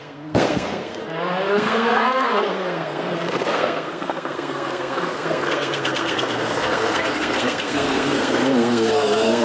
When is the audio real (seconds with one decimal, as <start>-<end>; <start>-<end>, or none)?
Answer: 1.0-1.5